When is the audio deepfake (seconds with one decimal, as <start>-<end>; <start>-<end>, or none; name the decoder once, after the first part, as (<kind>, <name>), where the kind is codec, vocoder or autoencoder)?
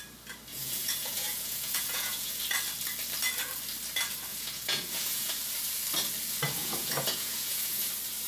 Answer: 0.5-2.4 (vocoder, Vocos); 4.3-5.3; 6.6-7.9